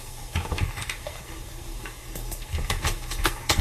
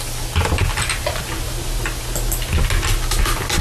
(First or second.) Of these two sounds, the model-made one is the first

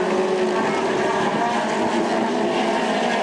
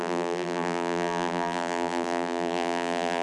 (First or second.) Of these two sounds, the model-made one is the second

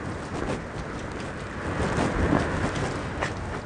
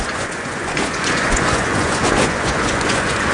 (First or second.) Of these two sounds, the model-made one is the second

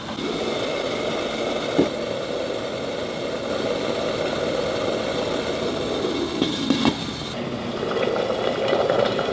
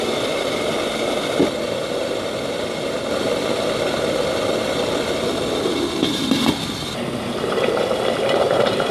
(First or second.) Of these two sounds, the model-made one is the second